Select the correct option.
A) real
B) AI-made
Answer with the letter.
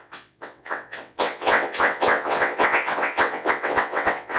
B